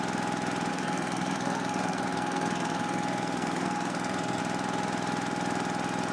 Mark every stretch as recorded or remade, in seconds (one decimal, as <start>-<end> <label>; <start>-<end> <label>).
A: 0.0-0.7 recorded; 0.7-4.4 remade; 4.4-6.1 recorded